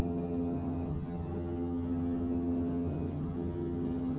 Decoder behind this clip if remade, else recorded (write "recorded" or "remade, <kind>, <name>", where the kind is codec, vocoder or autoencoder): remade, vocoder, HiFi-GAN